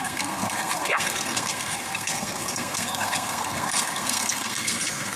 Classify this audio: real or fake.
fake